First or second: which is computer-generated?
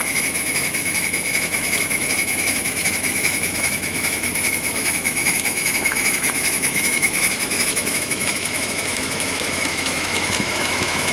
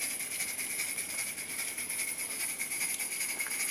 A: first